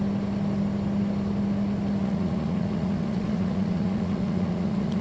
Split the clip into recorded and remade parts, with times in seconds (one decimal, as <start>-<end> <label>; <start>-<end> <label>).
0.0-2.0 recorded; 2.0-5.0 remade